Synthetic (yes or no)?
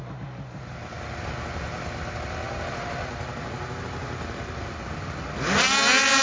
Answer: no